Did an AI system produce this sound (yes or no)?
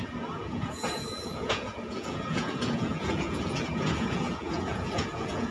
yes